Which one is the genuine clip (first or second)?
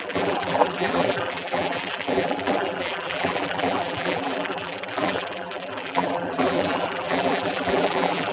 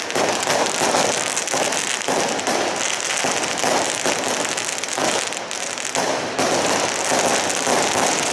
second